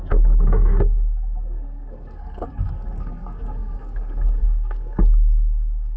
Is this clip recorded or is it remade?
remade